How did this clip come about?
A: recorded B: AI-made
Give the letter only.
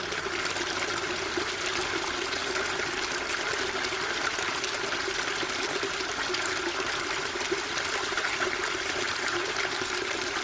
A